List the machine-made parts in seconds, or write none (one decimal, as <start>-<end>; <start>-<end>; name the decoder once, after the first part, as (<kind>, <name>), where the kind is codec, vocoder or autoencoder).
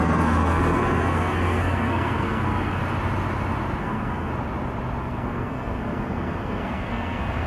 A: 0.0-2.8 (codec, SNAC); 3.8-4.3; 5.0-7.5